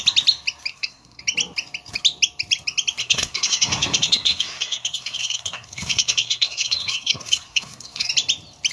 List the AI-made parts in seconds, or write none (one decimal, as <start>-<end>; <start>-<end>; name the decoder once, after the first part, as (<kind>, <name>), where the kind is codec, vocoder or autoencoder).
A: 0.7-1.2 (codec, SNAC); 3.0-8.1